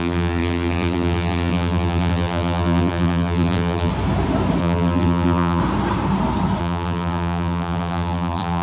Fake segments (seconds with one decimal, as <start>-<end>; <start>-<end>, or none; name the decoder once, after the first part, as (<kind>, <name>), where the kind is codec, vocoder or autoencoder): 0.0-3.9 (vocoder, BigVGAN v2); 4.6-5.6; 6.6-8.6